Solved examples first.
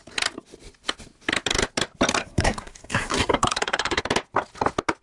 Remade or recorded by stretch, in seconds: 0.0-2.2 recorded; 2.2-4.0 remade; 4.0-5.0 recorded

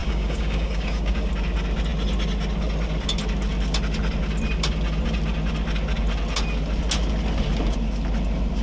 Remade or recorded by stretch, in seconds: 0.0-1.3 remade; 1.3-8.6 recorded

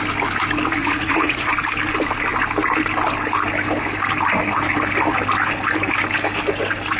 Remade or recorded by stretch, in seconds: 0.0-0.8 recorded; 0.8-1.5 remade; 1.5-7.0 recorded

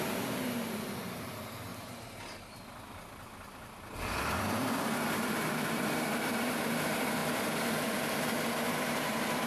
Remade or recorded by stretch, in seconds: 0.0-1.7 remade; 1.7-4.0 recorded; 4.0-9.5 remade

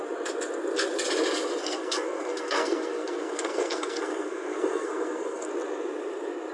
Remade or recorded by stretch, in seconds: 0.0-1.6 recorded; 1.6-5.5 remade; 5.5-6.5 recorded